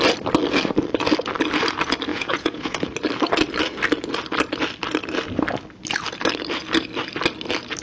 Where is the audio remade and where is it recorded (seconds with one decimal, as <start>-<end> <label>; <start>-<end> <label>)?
0.0-2.1 recorded; 2.1-2.9 remade; 2.9-7.8 recorded